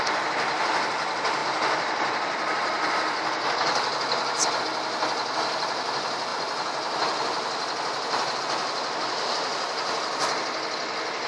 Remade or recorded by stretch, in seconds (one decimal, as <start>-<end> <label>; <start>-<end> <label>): 0.0-11.3 recorded

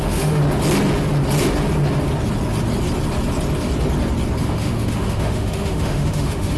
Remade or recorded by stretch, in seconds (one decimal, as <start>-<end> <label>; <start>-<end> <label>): 0.0-0.4 remade; 0.4-4.4 recorded; 4.4-6.6 remade

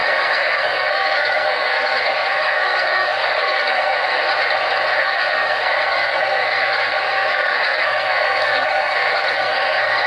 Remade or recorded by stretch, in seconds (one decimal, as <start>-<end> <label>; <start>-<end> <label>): 0.0-4.3 remade; 4.3-5.0 recorded; 5.0-10.1 remade